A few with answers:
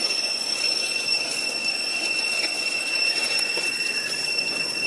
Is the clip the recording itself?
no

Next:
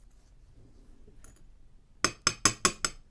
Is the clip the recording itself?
yes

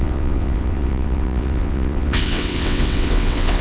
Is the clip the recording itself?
no